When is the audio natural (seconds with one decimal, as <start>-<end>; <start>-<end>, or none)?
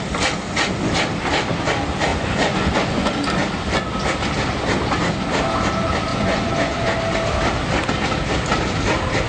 0.0-2.1; 3.1-6.1; 7.0-9.3